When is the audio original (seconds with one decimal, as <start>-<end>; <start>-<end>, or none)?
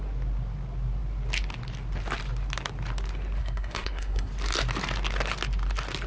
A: 0.0-3.4; 4.3-6.1